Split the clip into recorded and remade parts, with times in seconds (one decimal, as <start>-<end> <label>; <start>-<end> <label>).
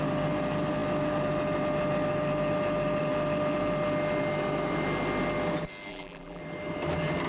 0.0-5.9 recorded; 5.9-6.4 remade; 6.4-7.3 recorded